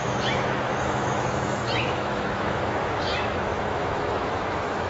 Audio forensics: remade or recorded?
remade